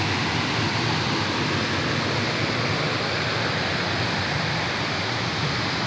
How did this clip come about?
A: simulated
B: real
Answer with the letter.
B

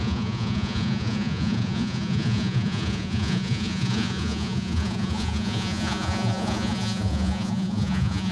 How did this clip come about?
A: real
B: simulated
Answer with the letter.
B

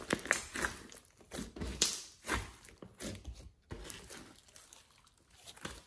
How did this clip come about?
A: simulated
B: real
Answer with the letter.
B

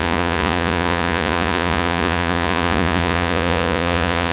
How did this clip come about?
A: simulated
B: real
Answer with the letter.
A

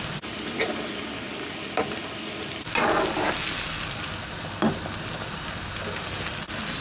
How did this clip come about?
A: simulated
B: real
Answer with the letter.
B